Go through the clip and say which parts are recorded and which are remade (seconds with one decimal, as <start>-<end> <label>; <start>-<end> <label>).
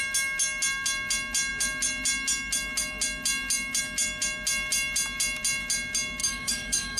0.0-6.2 recorded; 6.2-7.0 remade